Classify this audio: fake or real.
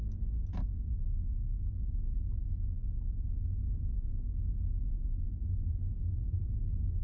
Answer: real